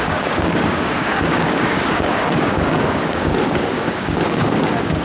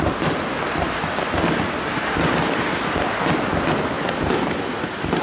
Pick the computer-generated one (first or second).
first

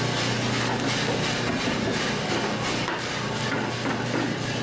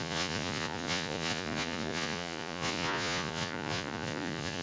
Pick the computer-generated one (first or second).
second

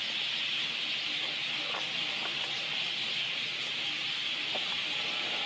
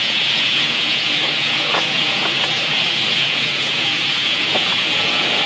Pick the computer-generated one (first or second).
second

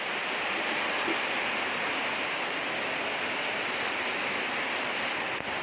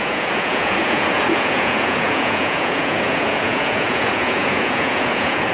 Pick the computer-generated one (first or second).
second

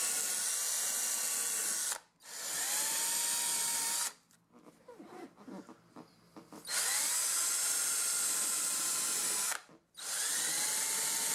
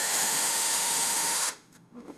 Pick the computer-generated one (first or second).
second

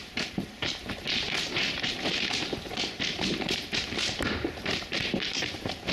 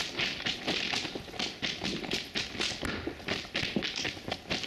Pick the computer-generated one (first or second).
first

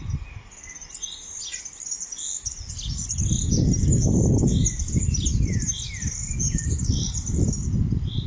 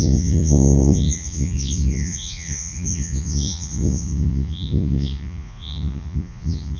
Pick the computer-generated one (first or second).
second